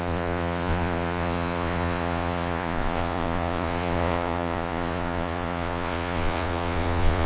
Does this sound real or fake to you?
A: fake